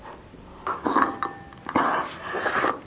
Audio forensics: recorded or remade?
recorded